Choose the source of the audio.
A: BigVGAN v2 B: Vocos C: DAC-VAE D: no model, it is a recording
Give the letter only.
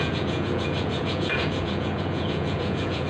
B